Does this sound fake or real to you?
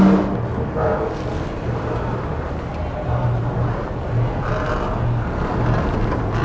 real